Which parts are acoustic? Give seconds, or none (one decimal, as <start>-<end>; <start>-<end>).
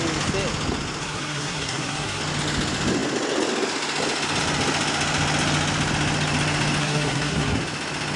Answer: 0.0-1.0; 2.2-6.8; 7.6-8.2